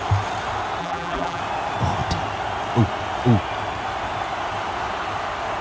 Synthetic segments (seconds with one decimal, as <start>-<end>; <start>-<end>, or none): 0.8-1.4